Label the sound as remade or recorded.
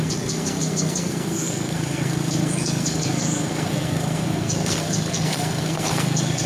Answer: remade